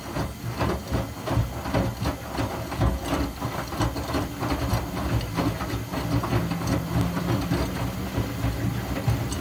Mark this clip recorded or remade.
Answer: recorded